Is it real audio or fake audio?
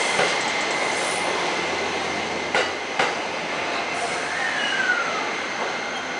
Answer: real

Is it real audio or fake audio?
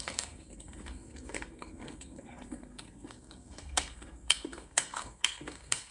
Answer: fake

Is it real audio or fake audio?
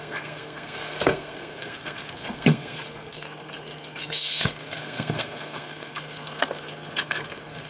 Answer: fake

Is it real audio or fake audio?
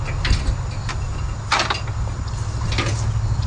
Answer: real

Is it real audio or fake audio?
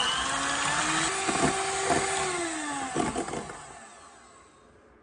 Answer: real